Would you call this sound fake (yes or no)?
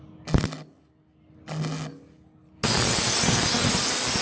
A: no